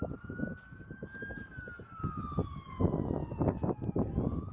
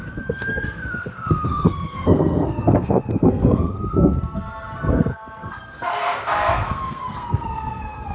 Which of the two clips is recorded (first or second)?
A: first